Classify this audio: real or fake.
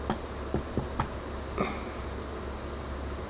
real